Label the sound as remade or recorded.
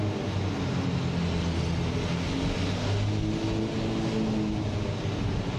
recorded